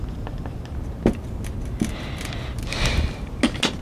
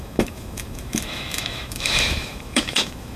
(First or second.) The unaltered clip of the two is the first